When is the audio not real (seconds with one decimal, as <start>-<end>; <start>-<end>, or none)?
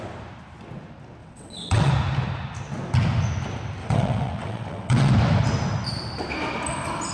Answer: 1.2-1.9; 3.8-5.1